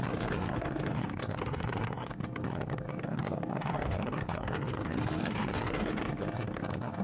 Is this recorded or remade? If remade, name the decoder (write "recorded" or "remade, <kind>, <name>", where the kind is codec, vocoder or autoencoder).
remade, codec, SNAC